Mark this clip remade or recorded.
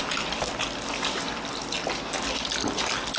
recorded